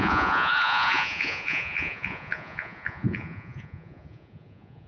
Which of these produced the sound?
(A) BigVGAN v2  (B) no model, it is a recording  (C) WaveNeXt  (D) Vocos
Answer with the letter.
D